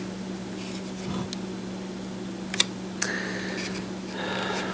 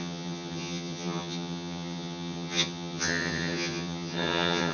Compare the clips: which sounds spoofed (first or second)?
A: second